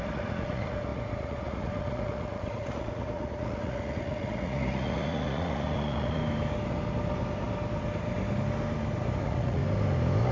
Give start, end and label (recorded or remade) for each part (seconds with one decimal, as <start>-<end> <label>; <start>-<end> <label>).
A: 0.0-6.2 remade; 6.2-9.2 recorded; 9.2-9.6 remade; 9.6-10.3 recorded